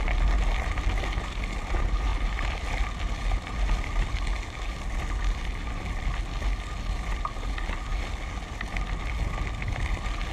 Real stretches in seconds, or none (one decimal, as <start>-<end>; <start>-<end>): 0.0-10.3